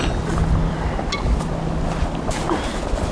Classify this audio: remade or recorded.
recorded